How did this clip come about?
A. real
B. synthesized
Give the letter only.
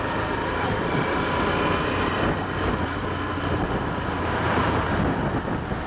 A